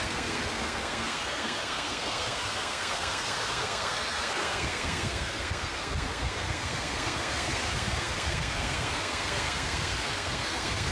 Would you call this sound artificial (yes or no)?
yes